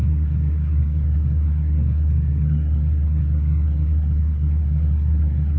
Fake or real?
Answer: fake